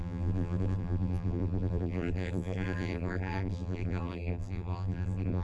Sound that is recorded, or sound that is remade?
remade